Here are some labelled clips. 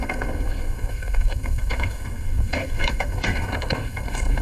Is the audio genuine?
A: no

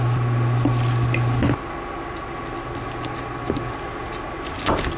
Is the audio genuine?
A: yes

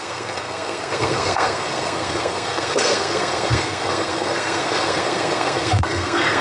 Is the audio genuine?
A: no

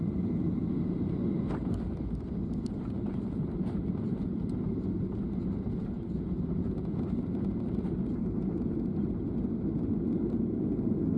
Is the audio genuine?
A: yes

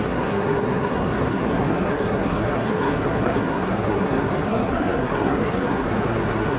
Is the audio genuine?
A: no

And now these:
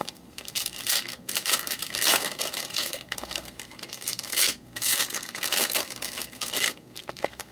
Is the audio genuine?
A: no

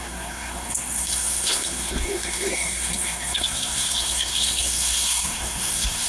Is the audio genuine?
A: no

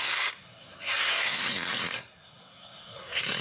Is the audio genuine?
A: no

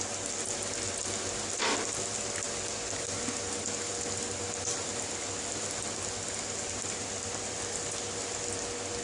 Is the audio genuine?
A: yes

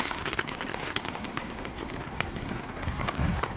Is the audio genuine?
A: no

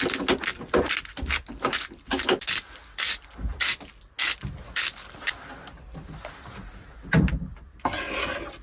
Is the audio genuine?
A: yes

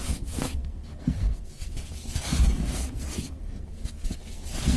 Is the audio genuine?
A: no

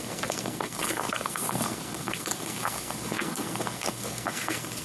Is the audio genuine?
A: no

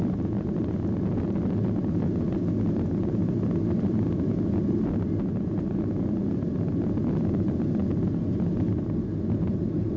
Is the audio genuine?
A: yes